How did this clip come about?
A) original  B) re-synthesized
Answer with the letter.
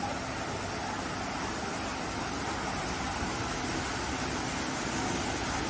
A